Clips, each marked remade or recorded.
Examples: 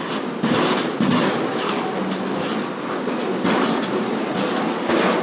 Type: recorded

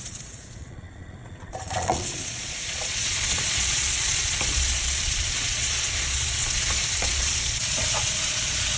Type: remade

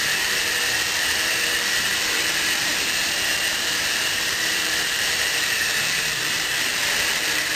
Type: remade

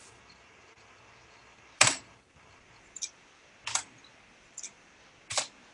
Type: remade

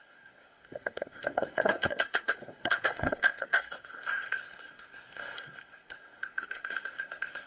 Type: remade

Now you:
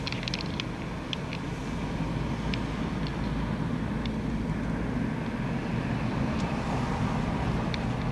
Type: recorded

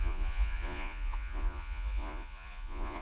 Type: remade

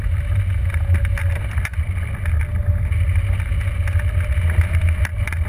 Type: recorded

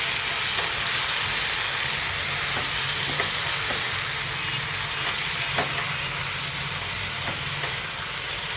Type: recorded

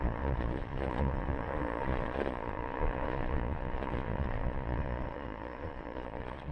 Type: remade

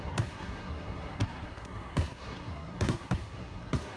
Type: remade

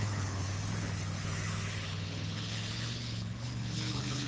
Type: remade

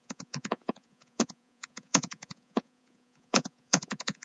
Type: remade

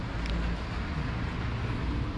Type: recorded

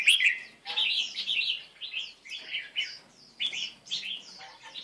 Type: remade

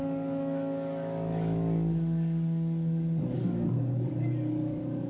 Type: remade